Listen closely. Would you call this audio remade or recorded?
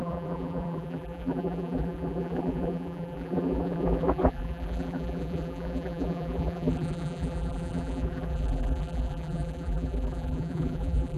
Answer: remade